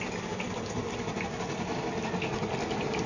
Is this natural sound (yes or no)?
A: yes